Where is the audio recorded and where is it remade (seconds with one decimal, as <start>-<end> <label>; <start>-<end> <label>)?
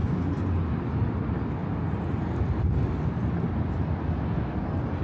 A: 0.0-0.7 remade; 0.7-5.0 recorded